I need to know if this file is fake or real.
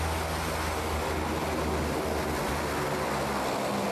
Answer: real